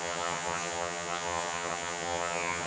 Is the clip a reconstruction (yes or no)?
yes